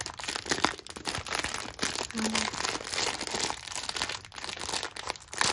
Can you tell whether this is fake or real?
real